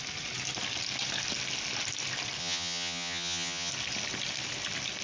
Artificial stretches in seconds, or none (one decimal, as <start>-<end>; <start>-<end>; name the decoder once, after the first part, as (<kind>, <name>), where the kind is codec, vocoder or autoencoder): 2.4-3.7 (vocoder, HiFi-GAN)